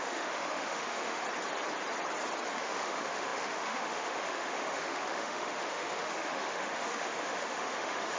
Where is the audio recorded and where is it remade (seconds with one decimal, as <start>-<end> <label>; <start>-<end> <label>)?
0.0-1.2 remade; 1.2-2.5 recorded; 2.5-8.2 remade